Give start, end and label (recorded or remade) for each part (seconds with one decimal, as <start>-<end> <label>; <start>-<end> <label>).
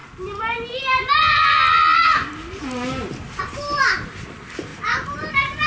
0.0-5.7 recorded